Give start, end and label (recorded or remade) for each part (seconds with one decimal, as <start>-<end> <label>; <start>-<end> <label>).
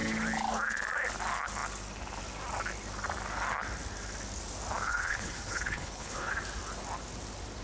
0.0-4.9 recorded; 4.9-6.3 remade; 6.3-7.6 recorded